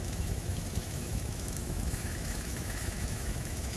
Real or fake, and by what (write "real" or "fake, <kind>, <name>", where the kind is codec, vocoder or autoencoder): fake, autoencoder, DAC-VAE